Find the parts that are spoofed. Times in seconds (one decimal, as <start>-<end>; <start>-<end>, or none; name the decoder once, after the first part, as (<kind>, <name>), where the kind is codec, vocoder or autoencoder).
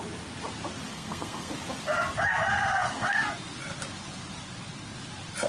0.9-1.5 (codec, SNAC); 2.3-3.3